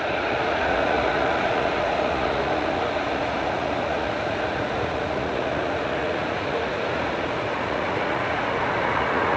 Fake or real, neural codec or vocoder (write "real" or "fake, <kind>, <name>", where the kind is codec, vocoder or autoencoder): fake, vocoder, Vocos